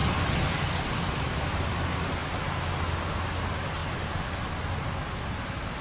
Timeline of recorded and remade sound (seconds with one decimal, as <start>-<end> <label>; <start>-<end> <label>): 0.0-5.8 recorded